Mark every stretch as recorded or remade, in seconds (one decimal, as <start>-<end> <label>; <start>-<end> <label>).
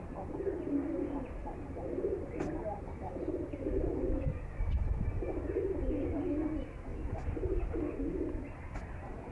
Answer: 0.0-1.4 recorded; 1.4-5.8 remade; 5.8-6.9 recorded; 6.9-7.7 remade; 7.7-9.3 recorded